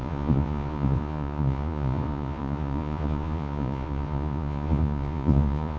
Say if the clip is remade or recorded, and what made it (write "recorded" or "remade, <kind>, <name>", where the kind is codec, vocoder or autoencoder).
remade, vocoder, Vocos